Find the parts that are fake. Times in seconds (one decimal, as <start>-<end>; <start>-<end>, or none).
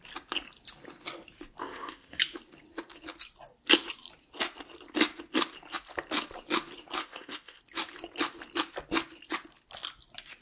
1.6-2.2; 7.0-7.6